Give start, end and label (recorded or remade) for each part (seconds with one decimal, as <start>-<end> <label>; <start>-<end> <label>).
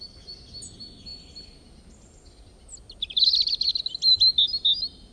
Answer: 0.0-5.1 recorded